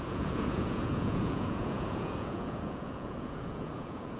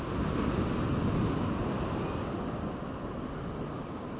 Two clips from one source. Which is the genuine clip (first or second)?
second